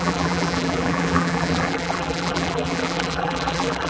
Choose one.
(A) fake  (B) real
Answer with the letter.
A